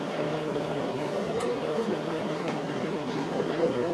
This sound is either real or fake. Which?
fake